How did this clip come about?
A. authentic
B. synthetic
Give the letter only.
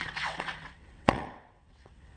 B